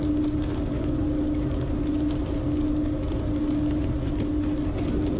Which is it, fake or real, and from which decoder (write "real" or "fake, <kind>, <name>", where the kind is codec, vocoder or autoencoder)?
real